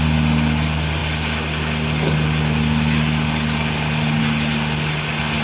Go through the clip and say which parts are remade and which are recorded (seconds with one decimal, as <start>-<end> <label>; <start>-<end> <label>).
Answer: 0.0-5.4 recorded